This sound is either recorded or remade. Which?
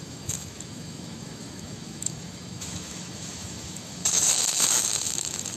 remade